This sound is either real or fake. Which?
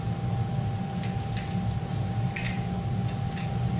real